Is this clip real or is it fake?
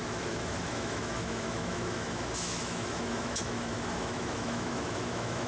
fake